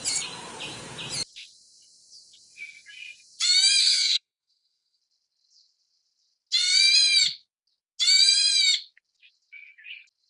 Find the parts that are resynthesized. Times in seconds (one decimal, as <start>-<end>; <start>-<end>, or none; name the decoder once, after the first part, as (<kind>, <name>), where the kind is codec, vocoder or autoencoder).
3.8-5.0 (codec, SNAC)